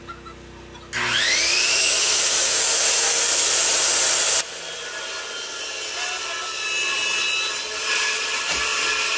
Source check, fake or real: real